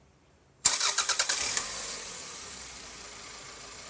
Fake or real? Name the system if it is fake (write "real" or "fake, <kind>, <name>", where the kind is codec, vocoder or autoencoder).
fake, vocoder, BigVGAN v2